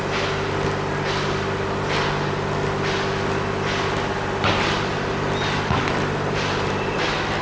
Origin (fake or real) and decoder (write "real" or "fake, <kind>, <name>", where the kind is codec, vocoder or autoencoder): real